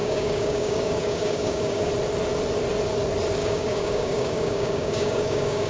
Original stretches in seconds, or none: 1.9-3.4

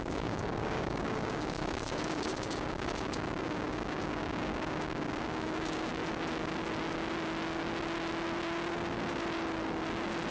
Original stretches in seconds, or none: 5.9-10.3

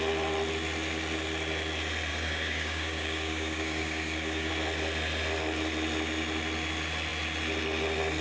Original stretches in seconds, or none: 0.0-2.1; 4.5-8.2

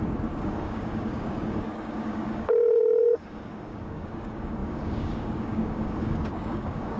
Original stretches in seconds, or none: none

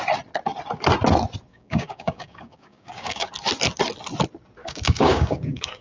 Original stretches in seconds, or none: 0.0-1.5; 3.3-4.6

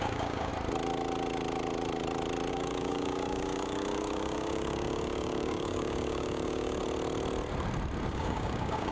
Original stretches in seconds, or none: 0.5-2.5; 6.8-8.1